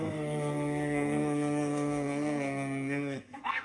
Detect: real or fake fake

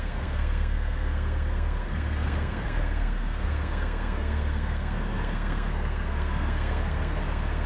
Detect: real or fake fake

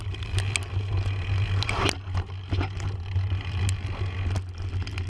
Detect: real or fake real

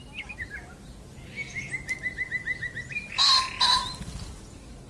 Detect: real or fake real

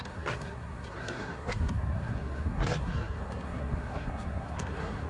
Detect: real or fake fake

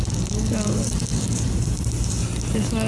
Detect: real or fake real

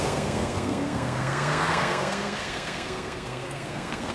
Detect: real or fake fake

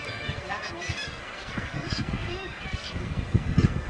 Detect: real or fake fake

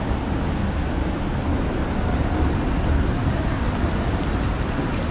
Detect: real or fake real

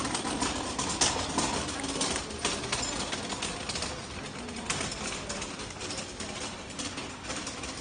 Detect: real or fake real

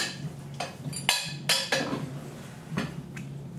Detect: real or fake real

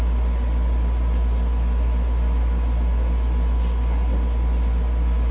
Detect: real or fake real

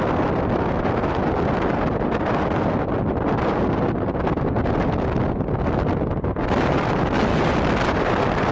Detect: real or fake real